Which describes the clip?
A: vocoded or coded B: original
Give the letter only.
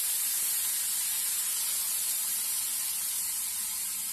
B